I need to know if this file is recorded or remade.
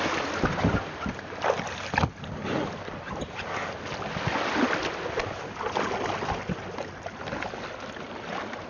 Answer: recorded